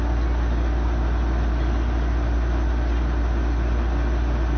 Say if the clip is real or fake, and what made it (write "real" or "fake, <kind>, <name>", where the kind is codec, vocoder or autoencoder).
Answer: real